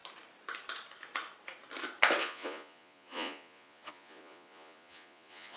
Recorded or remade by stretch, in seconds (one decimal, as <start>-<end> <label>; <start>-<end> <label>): 0.0-2.2 recorded; 2.2-5.6 remade